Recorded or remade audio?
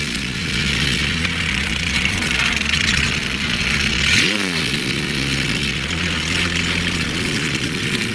remade